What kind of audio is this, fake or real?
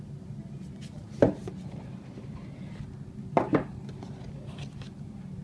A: real